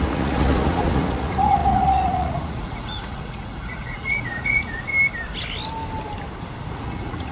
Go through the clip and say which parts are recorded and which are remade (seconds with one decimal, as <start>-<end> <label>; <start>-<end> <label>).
0.0-4.9 remade; 4.9-6.7 recorded; 6.7-7.3 remade